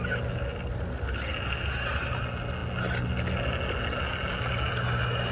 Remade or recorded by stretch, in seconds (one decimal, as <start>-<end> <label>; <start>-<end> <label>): 0.0-5.3 recorded